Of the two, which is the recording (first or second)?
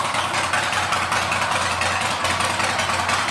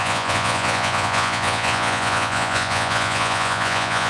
first